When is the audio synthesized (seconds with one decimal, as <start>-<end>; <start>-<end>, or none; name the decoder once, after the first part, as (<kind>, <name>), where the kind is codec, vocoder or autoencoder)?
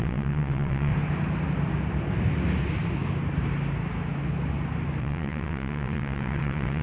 0.0-0.9 (vocoder, WaveNeXt); 5.0-6.8